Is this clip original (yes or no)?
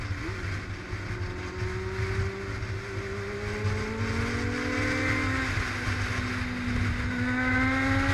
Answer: yes